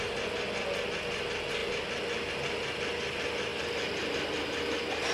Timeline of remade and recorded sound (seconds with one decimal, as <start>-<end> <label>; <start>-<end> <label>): 0.0-5.1 recorded